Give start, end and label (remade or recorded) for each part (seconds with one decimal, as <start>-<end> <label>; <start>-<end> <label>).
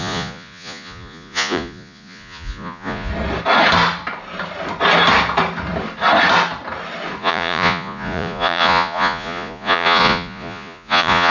0.0-3.1 remade; 3.1-7.2 recorded; 7.2-11.3 remade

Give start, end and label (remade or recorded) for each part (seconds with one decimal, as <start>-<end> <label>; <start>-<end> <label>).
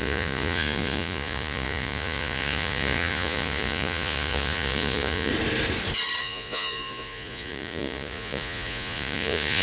0.0-5.3 remade; 5.3-6.2 recorded; 6.2-9.6 remade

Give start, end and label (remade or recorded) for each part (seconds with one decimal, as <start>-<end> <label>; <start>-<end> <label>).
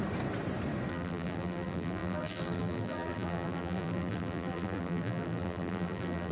0.0-0.9 recorded; 0.9-6.3 remade